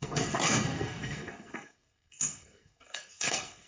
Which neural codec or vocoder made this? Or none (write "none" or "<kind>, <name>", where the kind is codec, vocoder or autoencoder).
codec, SNAC